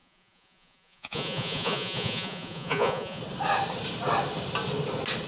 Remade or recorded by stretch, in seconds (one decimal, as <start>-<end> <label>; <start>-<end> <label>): 0.0-3.2 remade; 3.2-5.3 recorded